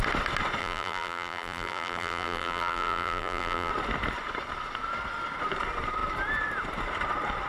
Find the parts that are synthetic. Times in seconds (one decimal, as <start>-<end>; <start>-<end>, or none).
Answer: 0.6-3.7